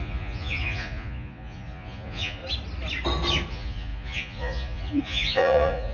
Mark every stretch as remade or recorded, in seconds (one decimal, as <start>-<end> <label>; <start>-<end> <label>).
0.0-2.4 remade; 2.4-3.5 recorded; 3.5-5.9 remade